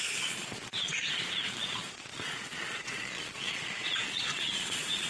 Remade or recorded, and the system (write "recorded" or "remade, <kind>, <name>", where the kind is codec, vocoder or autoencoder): remade, vocoder, Vocos